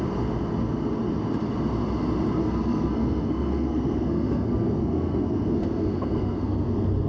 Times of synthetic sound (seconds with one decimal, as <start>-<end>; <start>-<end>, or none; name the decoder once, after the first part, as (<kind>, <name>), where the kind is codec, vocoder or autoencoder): 2.4-7.1 (codec, SNAC)

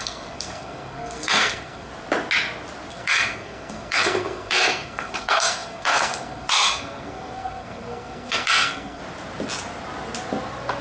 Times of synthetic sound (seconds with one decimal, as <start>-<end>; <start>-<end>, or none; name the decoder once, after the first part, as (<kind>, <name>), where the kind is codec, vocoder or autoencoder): 0.0-1.9 (codec, SNAC); 2.9-9.0

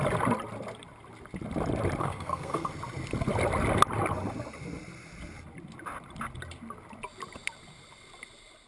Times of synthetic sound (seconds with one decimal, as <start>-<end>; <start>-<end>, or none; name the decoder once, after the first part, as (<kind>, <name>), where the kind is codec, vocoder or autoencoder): 2.0-2.7 (codec, SNAC)

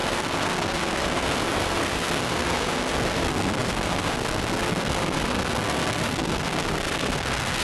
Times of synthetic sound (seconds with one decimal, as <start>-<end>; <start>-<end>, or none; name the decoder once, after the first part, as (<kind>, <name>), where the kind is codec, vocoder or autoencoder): 0.0-7.6 (codec, SNAC)